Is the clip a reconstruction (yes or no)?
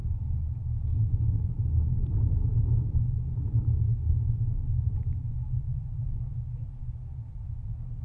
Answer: no